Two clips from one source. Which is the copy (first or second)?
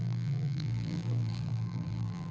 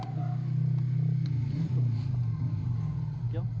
first